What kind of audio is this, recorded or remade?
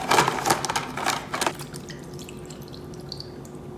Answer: recorded